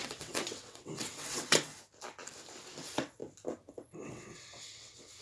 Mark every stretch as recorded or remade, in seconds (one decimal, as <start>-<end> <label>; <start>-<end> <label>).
0.0-1.7 remade; 1.7-2.8 recorded; 2.8-3.2 remade; 3.2-3.7 recorded; 3.7-5.2 remade